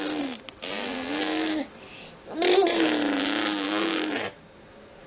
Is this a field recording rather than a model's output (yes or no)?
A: yes